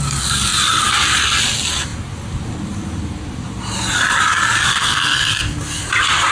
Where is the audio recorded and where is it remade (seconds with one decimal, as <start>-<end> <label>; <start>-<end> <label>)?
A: 0.0-4.7 recorded; 4.7-5.3 remade; 5.3-6.3 recorded